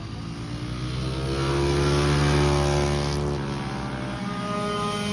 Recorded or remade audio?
recorded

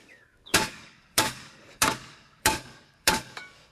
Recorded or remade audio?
remade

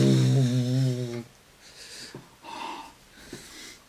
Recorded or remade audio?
recorded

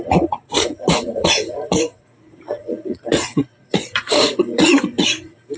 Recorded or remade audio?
remade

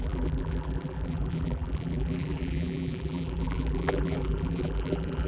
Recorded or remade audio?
remade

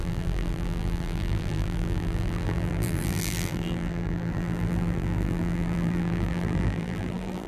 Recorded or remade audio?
remade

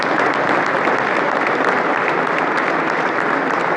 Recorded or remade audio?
recorded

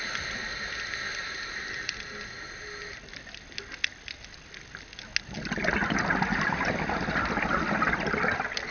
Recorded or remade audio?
recorded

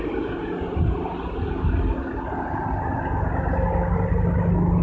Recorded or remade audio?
recorded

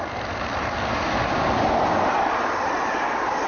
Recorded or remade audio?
recorded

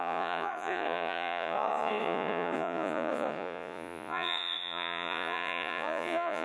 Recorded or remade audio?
remade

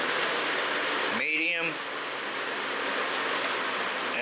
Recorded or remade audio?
recorded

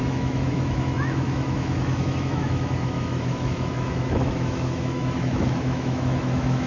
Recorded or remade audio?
remade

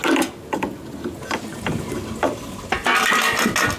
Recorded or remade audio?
recorded